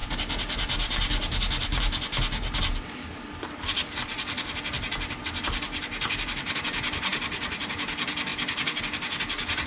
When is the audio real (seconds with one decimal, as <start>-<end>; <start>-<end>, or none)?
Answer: 0.0-9.7